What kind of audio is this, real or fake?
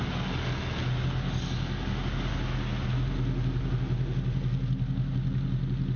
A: real